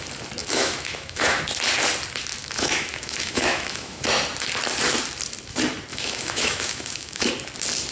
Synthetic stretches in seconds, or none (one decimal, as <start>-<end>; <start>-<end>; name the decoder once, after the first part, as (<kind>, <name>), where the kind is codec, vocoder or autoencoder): 0.4-1.4 (autoencoder, DAC-VAE); 2.4-4.0; 5.9-7.3